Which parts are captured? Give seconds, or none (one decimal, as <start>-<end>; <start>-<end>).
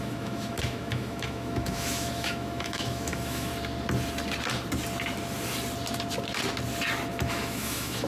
3.5-7.3